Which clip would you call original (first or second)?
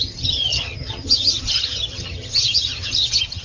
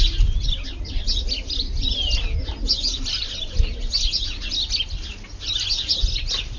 second